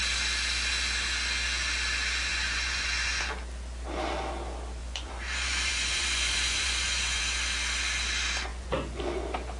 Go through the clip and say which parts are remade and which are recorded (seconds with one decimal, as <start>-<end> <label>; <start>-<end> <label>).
0.0-2.3 recorded; 2.3-3.2 remade; 3.2-4.8 recorded; 4.8-7.2 remade; 7.2-8.5 recorded; 8.5-9.2 remade; 9.2-9.6 recorded